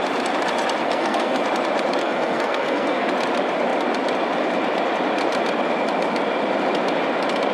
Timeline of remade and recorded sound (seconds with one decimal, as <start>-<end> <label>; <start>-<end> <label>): 0.0-0.8 recorded; 0.8-1.4 remade; 1.4-2.0 recorded; 2.0-3.1 remade; 3.1-7.5 recorded